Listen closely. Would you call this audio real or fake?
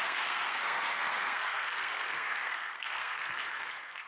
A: fake